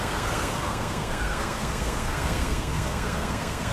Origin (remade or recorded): remade